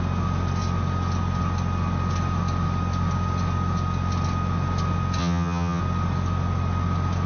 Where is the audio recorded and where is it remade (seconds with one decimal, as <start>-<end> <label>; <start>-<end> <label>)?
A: 0.0-5.2 recorded; 5.2-5.8 remade; 5.8-7.3 recorded